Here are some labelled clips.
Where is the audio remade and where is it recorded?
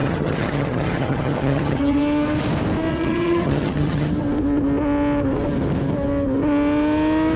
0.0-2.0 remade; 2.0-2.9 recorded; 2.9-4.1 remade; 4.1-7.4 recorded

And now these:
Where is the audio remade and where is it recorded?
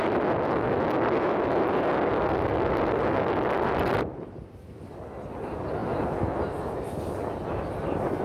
0.0-5.8 remade; 5.8-6.4 recorded; 6.4-8.2 remade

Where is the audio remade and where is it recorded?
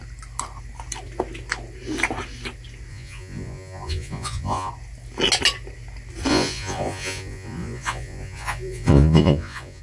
0.0-2.9 recorded; 2.9-4.7 remade; 4.7-6.3 recorded; 6.3-9.8 remade